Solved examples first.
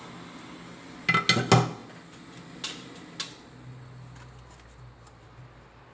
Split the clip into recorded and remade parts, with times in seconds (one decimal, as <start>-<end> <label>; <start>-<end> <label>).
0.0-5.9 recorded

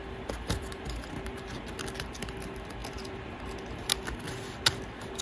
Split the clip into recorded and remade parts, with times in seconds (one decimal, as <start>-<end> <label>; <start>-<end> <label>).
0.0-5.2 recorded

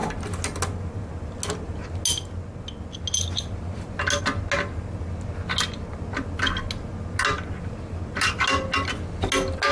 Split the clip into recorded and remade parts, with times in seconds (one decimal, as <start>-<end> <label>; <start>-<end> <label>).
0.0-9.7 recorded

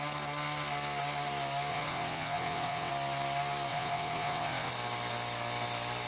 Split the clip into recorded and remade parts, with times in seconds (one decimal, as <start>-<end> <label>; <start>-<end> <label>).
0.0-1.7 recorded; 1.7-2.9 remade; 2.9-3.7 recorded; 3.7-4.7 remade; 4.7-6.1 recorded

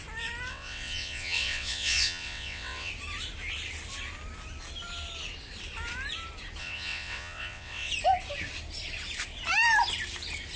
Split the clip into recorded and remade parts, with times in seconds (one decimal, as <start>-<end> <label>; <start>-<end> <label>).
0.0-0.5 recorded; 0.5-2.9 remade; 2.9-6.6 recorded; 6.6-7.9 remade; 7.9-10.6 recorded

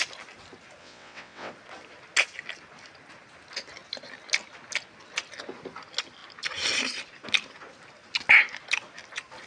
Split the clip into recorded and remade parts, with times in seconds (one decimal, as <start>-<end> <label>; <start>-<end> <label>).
0.0-0.8 recorded; 0.8-1.5 remade; 1.5-9.5 recorded

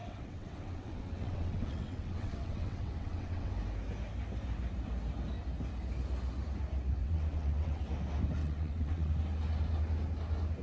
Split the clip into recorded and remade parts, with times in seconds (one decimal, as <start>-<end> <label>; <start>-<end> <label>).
0.0-3.5 remade; 3.5-7.0 recorded; 7.0-7.8 remade; 7.8-8.4 recorded; 8.4-9.1 remade; 9.1-10.6 recorded

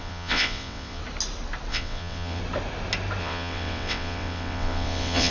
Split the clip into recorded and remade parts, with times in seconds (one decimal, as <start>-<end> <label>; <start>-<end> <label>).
0.0-1.0 remade; 1.0-1.7 recorded; 1.7-2.4 remade; 2.4-3.2 recorded; 3.2-5.3 remade